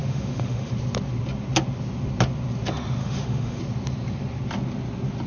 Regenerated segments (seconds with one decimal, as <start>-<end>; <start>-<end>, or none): 0.0-0.7; 3.0-3.6